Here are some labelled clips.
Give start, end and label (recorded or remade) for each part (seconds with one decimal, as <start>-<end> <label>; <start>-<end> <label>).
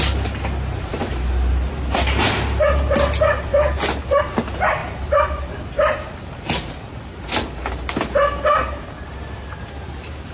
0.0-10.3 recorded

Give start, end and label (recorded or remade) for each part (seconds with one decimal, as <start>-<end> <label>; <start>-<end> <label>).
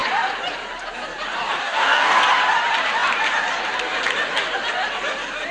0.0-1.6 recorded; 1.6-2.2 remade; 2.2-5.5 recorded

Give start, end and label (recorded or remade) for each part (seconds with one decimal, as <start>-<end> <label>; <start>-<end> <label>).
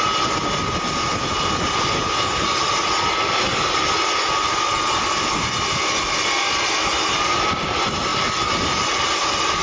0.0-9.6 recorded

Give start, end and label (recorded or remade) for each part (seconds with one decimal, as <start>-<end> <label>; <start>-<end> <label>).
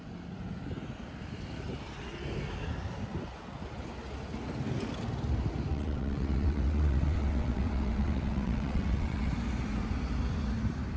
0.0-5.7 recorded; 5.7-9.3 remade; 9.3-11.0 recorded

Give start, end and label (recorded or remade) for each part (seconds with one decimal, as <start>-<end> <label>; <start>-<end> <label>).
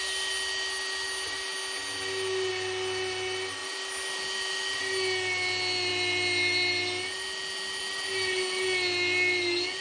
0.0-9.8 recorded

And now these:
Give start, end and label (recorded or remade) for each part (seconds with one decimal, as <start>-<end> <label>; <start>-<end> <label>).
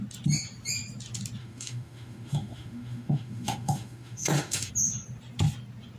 0.0-1.4 recorded; 1.4-4.7 remade; 4.7-6.0 recorded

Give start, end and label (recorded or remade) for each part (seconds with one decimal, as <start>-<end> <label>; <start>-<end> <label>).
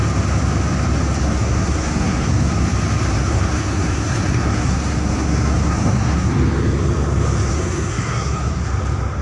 0.0-1.2 recorded; 1.2-2.5 remade; 2.5-3.1 recorded; 3.1-6.3 remade; 6.3-7.5 recorded; 7.5-8.6 remade; 8.6-9.2 recorded